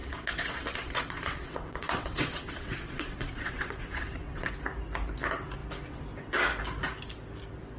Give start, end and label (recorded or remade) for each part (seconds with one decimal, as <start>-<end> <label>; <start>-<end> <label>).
0.0-4.5 remade; 4.5-7.8 recorded